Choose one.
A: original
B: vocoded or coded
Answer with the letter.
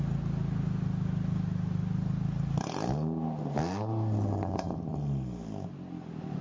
A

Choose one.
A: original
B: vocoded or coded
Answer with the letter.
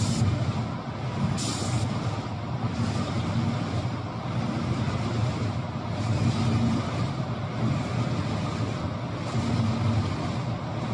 A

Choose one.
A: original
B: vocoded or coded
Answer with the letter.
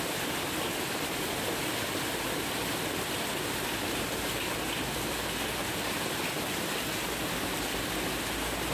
A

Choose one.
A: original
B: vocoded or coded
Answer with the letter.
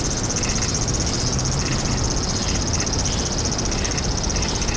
A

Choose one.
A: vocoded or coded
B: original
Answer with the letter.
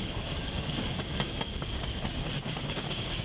A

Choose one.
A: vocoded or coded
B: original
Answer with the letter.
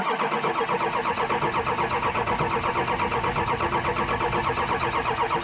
B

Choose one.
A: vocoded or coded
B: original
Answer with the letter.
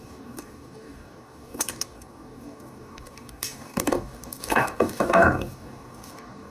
A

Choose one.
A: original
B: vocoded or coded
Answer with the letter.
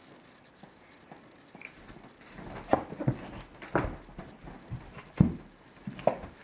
A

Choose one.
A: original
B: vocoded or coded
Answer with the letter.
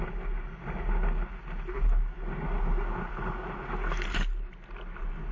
A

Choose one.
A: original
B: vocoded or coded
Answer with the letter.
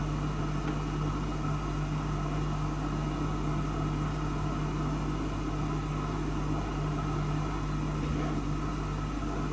A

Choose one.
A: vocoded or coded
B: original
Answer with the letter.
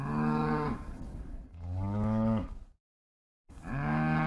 A